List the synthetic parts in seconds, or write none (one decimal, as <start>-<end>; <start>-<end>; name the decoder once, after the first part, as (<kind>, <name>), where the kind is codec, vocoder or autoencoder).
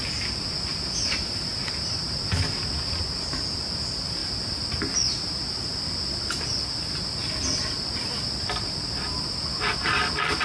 none